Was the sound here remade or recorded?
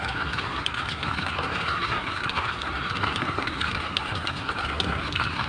remade